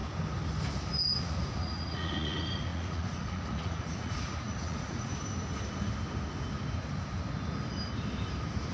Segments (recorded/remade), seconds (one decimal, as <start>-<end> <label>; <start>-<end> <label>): 0.0-1.2 recorded; 1.2-5.1 remade; 5.1-8.7 recorded